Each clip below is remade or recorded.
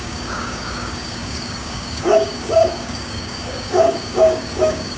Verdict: remade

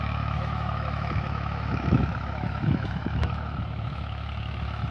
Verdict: remade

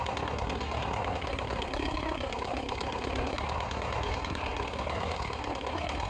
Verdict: remade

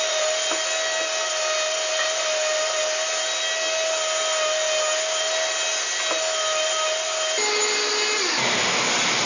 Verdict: recorded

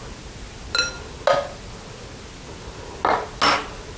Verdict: recorded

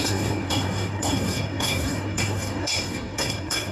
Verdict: remade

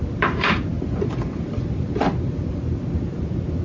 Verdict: recorded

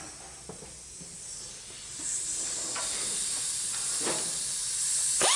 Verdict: recorded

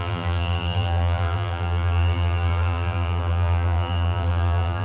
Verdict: remade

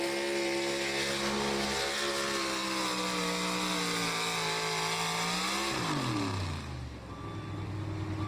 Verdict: recorded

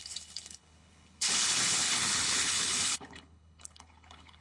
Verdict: remade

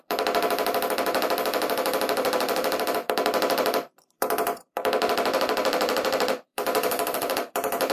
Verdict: remade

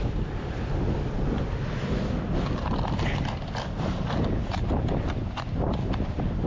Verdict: recorded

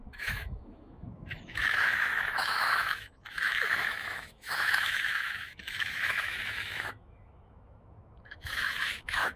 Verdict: remade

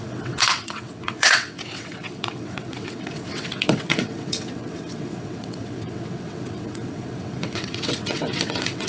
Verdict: remade